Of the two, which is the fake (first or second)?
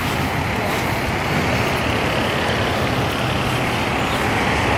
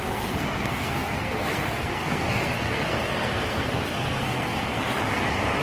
second